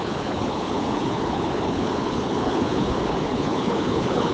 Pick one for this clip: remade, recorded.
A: remade